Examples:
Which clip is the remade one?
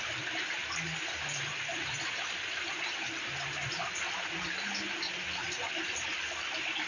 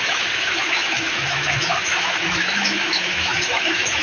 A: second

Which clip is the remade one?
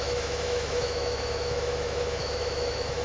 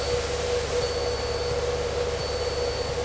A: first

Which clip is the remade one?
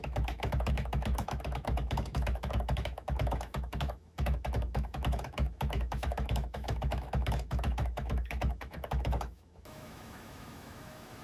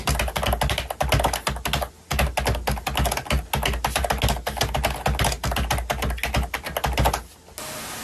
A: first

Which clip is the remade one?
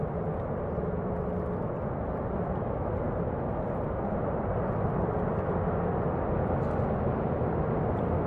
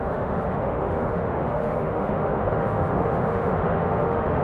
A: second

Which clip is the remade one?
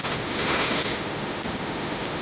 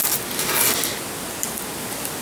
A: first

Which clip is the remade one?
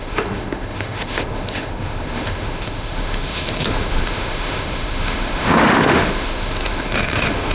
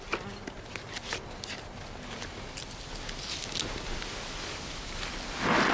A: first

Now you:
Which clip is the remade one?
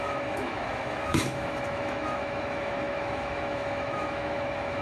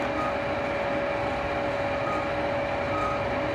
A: first